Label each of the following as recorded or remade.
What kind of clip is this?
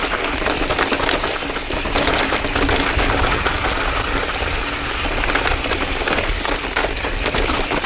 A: recorded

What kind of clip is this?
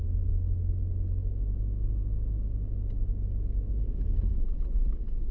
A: recorded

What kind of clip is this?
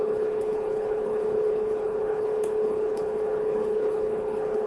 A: remade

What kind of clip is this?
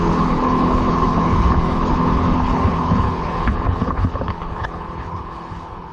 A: remade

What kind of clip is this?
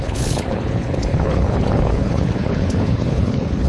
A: remade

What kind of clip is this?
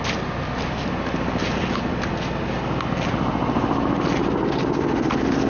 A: recorded